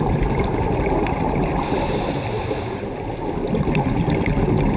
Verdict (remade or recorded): recorded